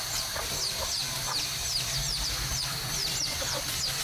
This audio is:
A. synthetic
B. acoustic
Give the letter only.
B